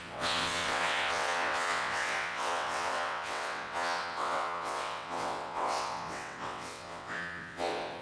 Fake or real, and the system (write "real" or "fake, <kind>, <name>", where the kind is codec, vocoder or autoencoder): fake, vocoder, WaveNeXt